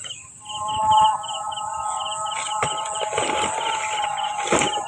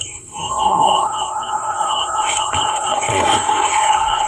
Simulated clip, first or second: second